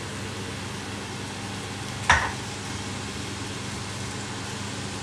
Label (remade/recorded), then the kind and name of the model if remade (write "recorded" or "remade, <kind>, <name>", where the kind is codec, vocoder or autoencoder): recorded